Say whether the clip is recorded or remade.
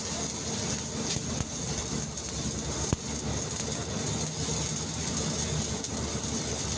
recorded